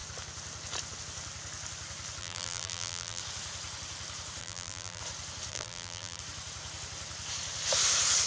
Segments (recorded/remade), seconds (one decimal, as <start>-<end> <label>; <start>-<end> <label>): 0.0-2.2 recorded; 2.2-3.2 remade; 3.2-4.4 recorded; 4.4-5.0 remade; 5.0-5.5 recorded; 5.5-6.2 remade; 6.2-8.3 recorded